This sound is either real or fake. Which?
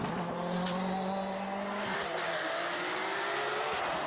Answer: real